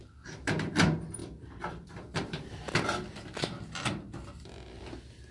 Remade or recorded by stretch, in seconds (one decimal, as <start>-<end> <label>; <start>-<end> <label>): 0.0-1.2 recorded; 1.2-2.5 remade; 2.5-5.3 recorded